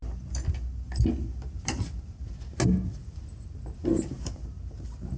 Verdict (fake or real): real